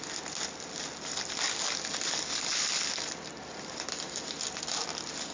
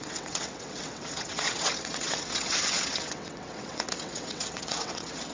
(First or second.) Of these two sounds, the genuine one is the first